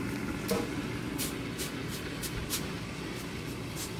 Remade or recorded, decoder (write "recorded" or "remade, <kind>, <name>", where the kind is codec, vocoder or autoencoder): recorded